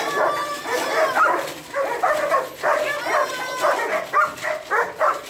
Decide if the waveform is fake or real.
real